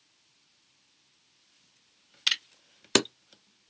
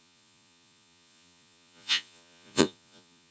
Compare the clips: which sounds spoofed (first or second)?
second